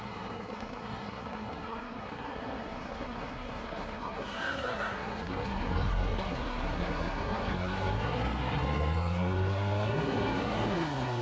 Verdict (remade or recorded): remade